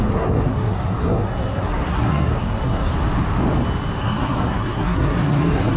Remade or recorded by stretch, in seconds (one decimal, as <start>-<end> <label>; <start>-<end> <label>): 0.0-2.9 remade; 2.9-4.0 recorded; 4.0-5.8 remade